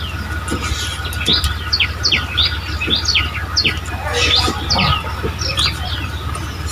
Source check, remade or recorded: recorded